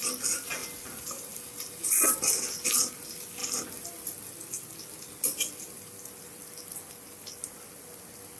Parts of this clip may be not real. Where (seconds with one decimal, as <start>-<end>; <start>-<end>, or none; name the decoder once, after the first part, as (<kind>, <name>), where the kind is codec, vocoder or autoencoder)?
none